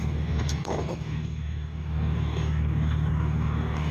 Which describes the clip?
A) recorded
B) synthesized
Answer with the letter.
B